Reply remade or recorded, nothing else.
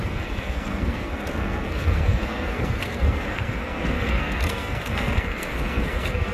remade